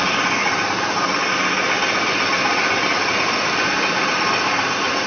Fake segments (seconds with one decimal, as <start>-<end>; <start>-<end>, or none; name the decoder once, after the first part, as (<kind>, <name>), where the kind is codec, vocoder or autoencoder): none